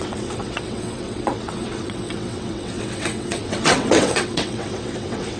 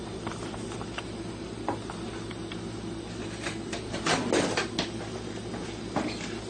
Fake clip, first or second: first